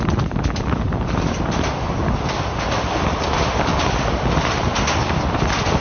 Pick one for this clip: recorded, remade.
recorded